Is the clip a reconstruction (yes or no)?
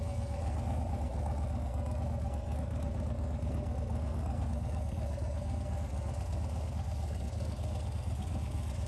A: yes